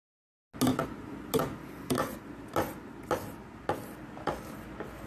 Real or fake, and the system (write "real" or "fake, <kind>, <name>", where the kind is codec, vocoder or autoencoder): real